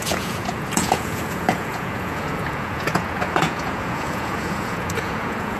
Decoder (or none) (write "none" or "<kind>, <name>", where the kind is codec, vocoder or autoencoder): vocoder, Vocos